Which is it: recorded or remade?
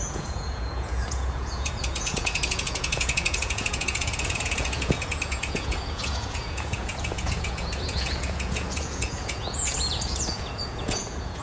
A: remade